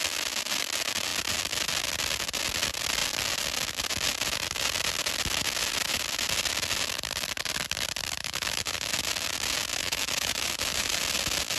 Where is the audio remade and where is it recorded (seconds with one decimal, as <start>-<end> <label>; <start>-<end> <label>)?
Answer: 0.0-8.2 recorded; 8.2-8.9 remade; 8.9-9.7 recorded; 9.7-11.0 remade; 11.0-11.6 recorded